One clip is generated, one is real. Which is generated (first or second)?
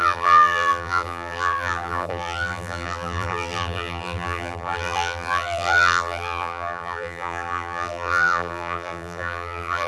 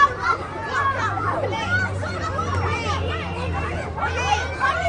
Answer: first